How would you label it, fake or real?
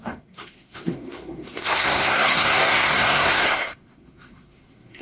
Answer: fake